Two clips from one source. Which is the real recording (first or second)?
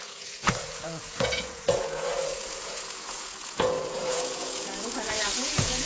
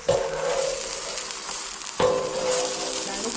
second